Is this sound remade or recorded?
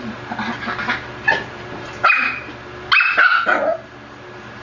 recorded